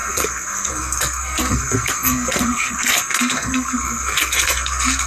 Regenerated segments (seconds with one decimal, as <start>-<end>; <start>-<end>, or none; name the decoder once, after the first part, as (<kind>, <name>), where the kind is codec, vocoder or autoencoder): 0.0-5.1 (codec, SNAC)